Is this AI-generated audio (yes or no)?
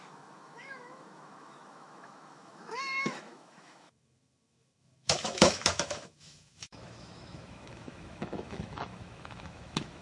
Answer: yes